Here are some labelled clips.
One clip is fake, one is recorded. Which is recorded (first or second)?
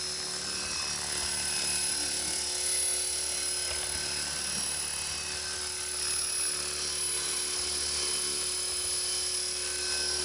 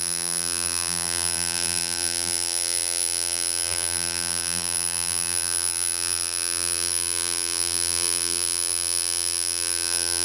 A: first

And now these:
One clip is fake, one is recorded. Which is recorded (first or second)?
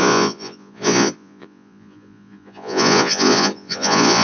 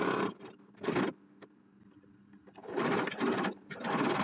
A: second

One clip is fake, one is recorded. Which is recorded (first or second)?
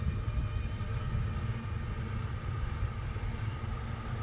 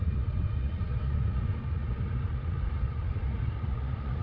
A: first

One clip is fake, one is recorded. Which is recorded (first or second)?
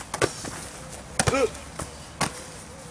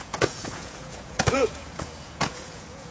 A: first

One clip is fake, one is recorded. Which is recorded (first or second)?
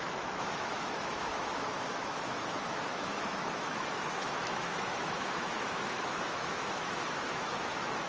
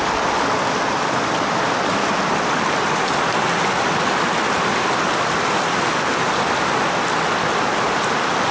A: second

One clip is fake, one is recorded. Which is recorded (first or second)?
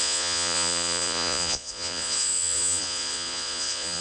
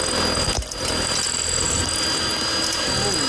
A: second